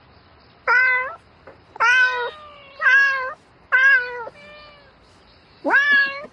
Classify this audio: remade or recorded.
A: recorded